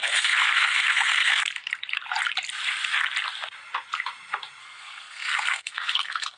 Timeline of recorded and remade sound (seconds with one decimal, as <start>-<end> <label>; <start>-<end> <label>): 0.0-1.4 remade; 1.4-4.6 recorded; 4.6-6.4 remade